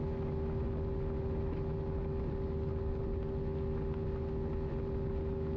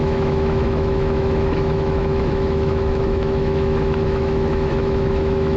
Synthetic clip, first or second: second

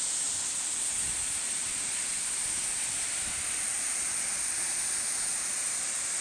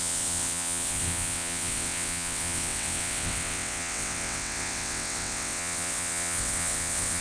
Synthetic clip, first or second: second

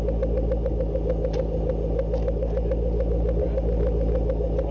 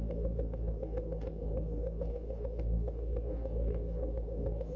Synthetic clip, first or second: second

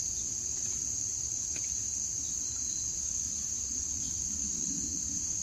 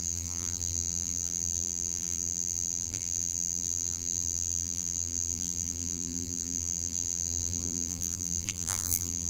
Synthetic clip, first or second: second